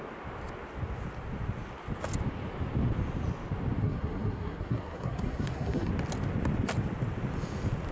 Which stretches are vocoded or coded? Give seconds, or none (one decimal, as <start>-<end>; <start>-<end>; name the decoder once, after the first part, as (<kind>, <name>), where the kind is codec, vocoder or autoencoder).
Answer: 3.8-5.9 (codec, SNAC)